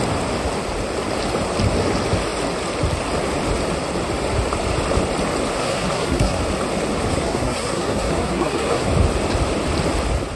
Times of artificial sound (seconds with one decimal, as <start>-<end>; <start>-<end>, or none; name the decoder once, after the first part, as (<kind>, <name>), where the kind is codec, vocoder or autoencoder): 5.6-6.4 (codec, SNAC); 7.1-8.9